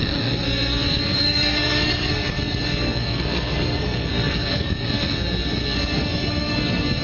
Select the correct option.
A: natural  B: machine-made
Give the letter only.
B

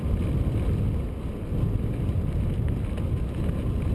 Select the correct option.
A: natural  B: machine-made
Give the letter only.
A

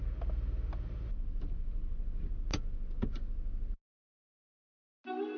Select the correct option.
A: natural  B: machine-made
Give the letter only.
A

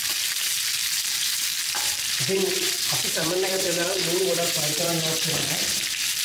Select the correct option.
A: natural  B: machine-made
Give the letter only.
B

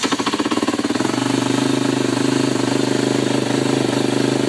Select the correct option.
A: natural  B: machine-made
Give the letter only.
A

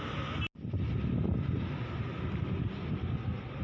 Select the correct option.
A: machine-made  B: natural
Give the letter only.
B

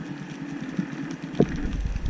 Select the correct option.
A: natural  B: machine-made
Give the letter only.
A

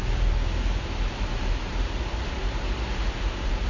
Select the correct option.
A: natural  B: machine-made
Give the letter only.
B